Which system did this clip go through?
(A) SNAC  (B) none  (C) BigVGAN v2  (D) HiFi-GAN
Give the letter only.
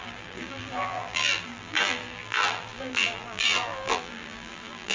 C